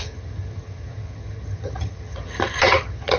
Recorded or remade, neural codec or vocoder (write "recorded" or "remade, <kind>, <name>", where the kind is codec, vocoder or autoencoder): remade, vocoder, HiFi-GAN